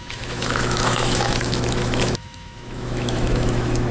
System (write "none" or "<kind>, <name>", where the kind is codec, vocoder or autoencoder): autoencoder, DAC-VAE